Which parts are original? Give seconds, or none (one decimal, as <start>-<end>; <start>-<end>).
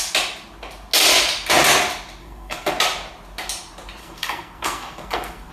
0.0-2.2; 2.7-4.0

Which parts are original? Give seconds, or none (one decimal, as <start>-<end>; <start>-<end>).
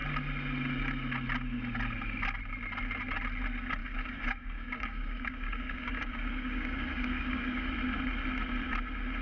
0.0-3.8; 7.7-9.2